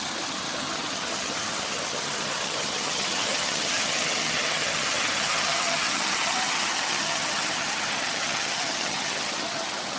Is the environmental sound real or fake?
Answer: fake